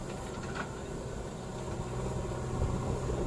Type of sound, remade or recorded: remade